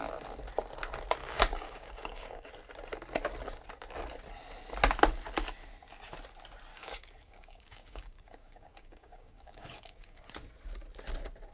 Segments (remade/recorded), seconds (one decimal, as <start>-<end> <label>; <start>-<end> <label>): 0.0-1.2 recorded; 1.2-2.5 remade; 2.5-6.7 recorded; 6.7-10.2 remade; 10.2-11.5 recorded